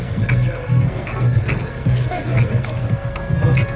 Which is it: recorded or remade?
remade